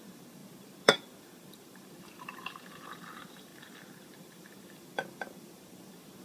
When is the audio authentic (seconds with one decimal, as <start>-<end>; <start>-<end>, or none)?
none